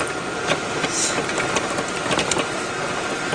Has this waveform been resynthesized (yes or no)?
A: no